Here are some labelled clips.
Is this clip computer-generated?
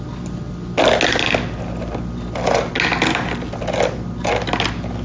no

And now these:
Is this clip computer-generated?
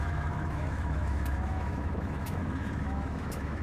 yes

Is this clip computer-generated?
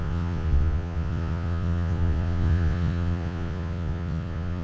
yes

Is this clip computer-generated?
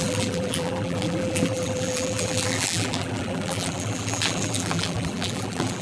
yes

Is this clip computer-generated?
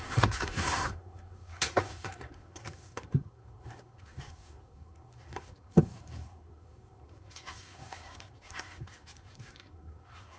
yes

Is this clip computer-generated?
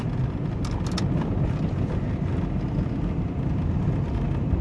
no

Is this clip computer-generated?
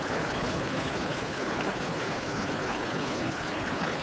yes